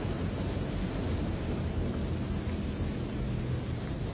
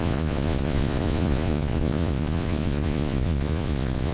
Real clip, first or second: first